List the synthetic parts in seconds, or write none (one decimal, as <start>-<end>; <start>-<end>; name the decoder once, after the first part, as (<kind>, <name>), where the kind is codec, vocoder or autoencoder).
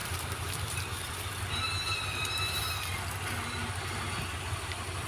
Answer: 0.0-1.5 (vocoder, BigVGAN v2)